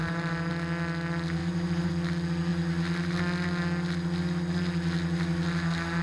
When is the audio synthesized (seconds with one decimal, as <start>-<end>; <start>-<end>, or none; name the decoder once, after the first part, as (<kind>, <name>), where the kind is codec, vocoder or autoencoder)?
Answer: 0.0-0.5 (vocoder, BigVGAN v2); 1.4-1.9